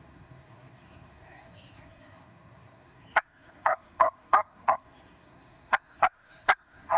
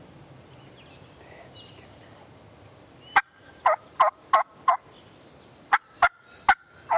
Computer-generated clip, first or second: first